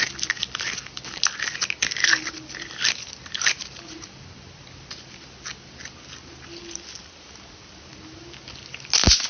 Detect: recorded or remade recorded